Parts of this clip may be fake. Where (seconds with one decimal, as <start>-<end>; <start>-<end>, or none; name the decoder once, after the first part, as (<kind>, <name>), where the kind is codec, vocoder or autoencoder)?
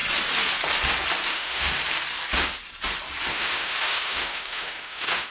1.3-1.8 (autoencoder, DAC-VAE); 3.3-5.3